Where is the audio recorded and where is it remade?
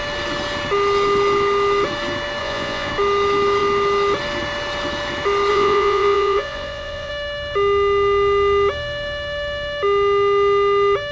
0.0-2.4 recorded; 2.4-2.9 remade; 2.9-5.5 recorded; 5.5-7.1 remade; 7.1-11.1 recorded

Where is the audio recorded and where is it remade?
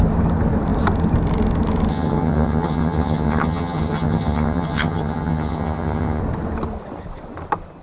0.0-1.9 recorded; 1.9-6.2 remade; 6.2-7.8 recorded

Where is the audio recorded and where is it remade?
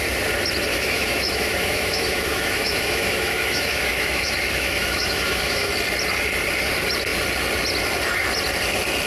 0.0-0.7 recorded; 0.7-5.7 remade; 5.7-9.1 recorded